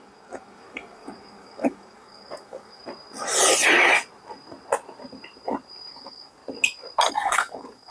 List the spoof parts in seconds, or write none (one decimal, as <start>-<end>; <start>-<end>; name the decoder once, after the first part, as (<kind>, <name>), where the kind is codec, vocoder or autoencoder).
0.0-2.8 (codec, DAC); 5.9-6.4; 7.1-7.9